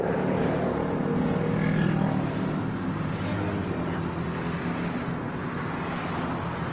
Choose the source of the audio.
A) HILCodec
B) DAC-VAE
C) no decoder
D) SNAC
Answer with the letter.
C